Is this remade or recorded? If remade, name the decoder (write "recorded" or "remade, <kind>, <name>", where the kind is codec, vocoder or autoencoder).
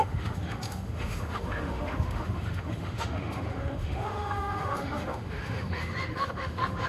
remade, autoencoder, DAC-VAE